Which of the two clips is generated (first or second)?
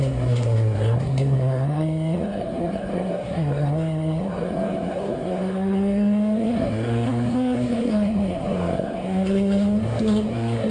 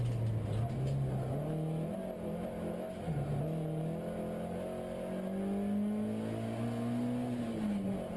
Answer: first